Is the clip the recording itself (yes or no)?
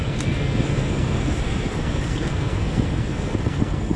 no